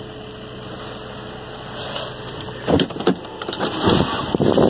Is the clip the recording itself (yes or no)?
yes